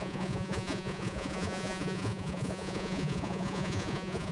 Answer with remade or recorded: remade